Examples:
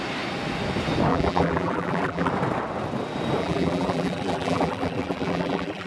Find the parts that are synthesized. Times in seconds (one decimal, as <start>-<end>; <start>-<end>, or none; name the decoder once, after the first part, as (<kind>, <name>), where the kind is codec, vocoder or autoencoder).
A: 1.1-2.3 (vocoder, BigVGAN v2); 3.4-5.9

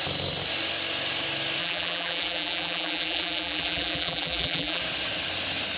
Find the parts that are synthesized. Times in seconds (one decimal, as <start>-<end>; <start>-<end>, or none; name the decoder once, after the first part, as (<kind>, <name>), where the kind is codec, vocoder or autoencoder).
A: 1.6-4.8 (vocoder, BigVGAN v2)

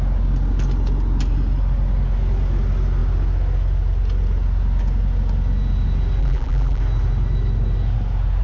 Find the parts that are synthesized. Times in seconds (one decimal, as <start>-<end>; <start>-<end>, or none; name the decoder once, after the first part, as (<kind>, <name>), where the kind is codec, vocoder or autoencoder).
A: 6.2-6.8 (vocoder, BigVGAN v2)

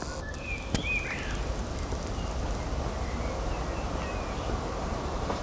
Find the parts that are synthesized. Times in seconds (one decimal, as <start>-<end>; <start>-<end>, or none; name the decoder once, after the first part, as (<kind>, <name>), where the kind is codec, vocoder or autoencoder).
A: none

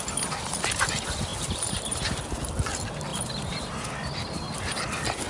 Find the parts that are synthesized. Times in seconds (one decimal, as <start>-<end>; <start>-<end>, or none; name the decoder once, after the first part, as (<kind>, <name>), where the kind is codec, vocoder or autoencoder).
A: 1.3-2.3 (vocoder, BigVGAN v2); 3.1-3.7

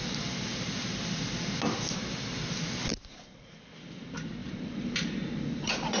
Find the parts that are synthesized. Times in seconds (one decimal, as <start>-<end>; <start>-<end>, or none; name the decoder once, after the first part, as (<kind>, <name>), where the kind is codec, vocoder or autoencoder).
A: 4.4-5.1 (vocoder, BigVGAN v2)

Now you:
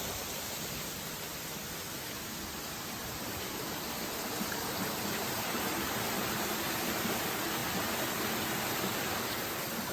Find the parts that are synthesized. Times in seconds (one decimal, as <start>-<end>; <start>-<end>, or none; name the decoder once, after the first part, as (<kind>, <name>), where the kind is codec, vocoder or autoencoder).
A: 0.0-1.3 (vocoder, BigVGAN v2); 2.1-7.6; 8.6-9.9